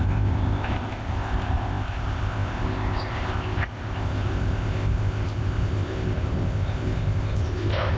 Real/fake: fake